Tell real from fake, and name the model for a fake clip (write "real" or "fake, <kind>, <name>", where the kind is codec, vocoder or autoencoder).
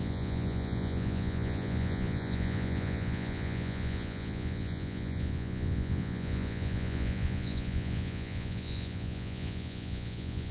fake, vocoder, Vocos